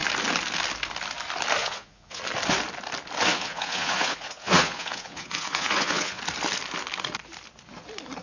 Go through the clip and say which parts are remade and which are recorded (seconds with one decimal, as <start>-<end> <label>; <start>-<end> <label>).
0.0-1.6 recorded; 1.6-2.2 remade; 2.2-3.3 recorded; 3.3-6.2 remade; 6.2-8.2 recorded